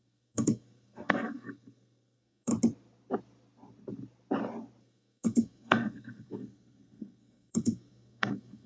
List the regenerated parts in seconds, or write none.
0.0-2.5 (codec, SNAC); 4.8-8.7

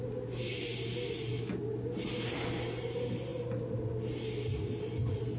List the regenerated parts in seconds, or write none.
none

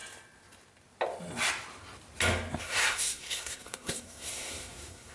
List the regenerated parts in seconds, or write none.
2.6-5.1 (codec, SNAC)

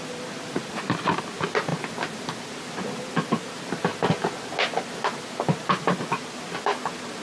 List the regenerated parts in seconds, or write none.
none

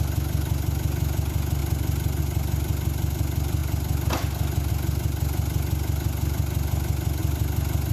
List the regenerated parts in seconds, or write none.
none

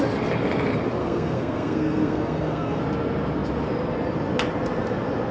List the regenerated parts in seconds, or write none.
1.0-2.8 (codec, SNAC)

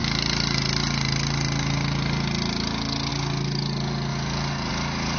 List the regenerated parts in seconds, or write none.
none